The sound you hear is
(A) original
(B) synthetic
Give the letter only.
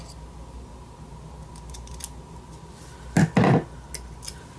A